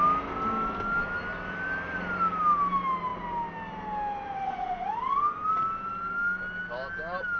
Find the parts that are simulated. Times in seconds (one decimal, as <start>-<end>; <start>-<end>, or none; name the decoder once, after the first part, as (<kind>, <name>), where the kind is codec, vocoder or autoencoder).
none

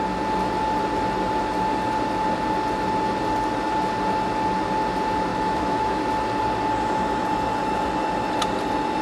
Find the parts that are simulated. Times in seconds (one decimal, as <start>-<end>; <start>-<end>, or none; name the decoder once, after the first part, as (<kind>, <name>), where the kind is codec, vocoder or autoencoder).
5.3-6.0 (autoencoder, DAC-VAE)

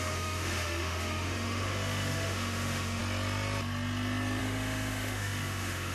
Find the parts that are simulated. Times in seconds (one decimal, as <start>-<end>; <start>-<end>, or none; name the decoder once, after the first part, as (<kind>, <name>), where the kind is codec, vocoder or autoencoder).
0.0-3.0 (autoencoder, DAC-VAE); 4.4-5.9

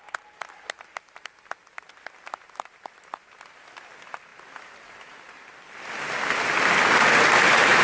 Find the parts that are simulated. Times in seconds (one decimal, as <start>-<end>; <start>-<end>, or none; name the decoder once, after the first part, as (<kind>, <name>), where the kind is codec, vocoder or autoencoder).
none